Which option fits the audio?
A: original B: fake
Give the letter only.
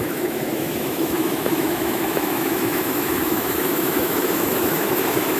B